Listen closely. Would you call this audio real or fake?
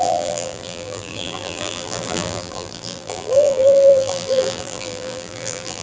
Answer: fake